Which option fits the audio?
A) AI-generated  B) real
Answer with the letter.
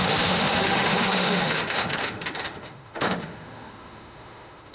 A